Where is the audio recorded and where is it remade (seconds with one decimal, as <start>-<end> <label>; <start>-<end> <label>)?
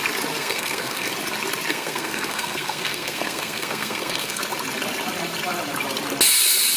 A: 0.0-0.4 recorded; 0.4-1.1 remade; 1.1-1.7 recorded; 1.7-4.4 remade; 4.4-6.8 recorded